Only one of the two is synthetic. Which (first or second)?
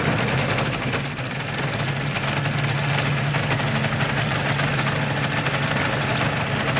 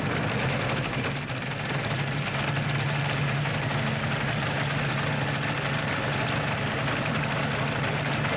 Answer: second